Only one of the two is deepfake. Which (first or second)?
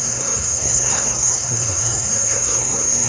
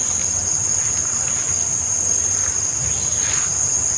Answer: first